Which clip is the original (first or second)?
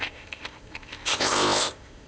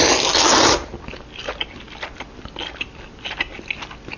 second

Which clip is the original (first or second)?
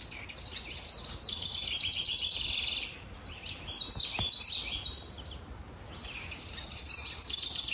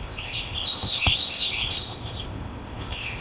first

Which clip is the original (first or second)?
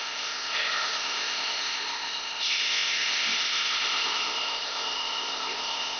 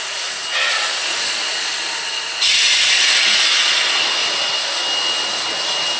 second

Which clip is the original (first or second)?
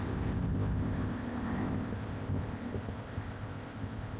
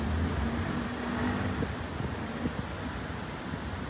second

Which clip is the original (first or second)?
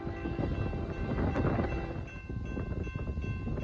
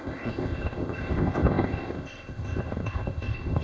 first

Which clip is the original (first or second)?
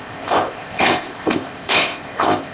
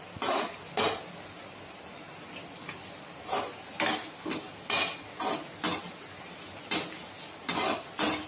second